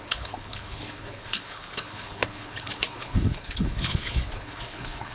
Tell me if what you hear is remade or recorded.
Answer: remade